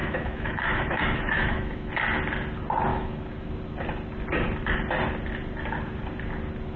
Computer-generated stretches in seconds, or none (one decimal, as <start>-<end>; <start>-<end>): 0.0-1.9; 2.9-3.5

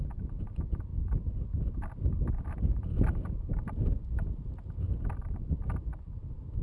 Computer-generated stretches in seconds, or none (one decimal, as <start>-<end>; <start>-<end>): none

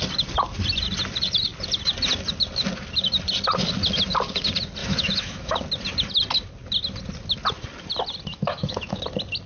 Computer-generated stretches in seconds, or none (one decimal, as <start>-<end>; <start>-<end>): 4.8-5.5; 8.3-9.0

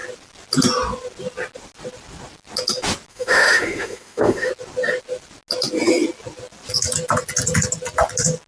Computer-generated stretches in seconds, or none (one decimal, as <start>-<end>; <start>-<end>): 3.1-4.5

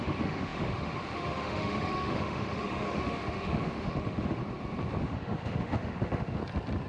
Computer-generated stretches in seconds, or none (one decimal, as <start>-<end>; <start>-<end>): 0.0-4.4; 5.0-6.4

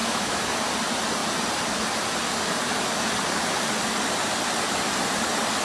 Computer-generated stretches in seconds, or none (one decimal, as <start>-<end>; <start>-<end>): 0.0-0.6